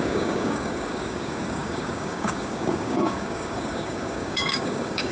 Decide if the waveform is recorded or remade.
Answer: remade